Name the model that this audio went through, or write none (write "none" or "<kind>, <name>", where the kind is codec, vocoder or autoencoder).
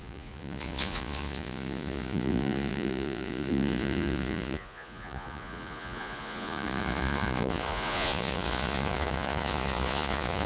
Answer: vocoder, Vocos